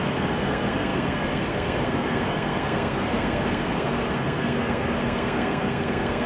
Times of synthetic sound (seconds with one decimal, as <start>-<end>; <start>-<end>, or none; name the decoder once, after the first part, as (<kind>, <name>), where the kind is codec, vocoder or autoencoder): 0.0-6.3 (codec, SNAC)